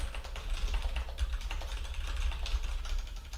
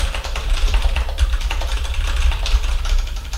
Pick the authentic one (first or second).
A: first